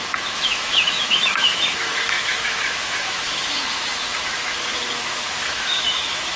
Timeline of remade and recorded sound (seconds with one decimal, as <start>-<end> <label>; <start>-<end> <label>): 0.0-6.4 remade